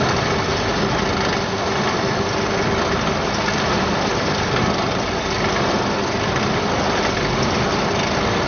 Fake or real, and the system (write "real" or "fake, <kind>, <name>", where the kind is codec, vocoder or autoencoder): real